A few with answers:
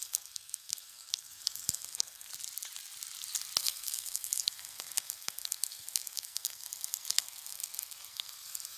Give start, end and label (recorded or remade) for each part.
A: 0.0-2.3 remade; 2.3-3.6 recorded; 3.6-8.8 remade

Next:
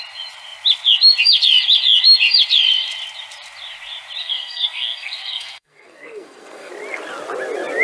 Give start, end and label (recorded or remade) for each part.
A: 0.0-4.2 recorded; 4.2-6.7 remade; 6.7-7.8 recorded

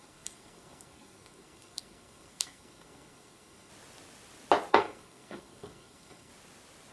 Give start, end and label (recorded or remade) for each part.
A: 0.0-3.7 remade; 3.7-4.7 recorded; 4.7-6.3 remade; 6.3-6.9 recorded

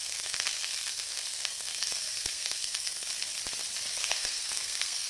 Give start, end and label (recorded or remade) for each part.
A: 0.0-3.1 remade; 3.1-3.9 recorded; 3.9-5.1 remade